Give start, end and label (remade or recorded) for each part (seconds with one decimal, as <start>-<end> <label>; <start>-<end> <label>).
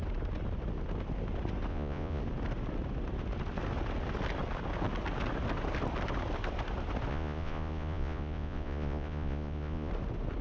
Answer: 0.0-1.7 recorded; 1.7-2.2 remade; 2.2-7.1 recorded; 7.1-9.9 remade; 9.9-10.4 recorded